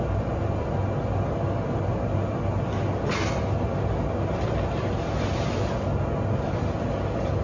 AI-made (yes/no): no